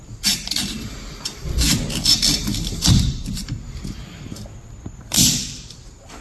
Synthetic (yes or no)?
yes